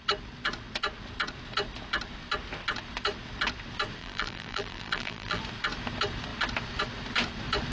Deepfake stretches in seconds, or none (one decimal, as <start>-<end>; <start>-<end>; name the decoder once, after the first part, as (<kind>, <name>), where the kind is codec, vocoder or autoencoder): 4.0-5.4 (vocoder, BigVGAN v2)